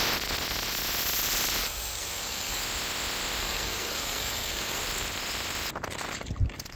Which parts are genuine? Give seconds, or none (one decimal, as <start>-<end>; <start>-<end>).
0.0-1.6; 2.6-3.4; 4.8-6.8

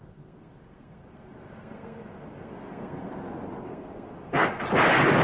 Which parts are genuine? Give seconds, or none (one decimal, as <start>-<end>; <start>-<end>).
3.1-3.7; 4.6-5.2

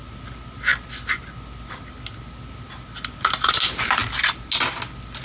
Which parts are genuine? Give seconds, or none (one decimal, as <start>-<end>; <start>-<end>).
0.0-5.2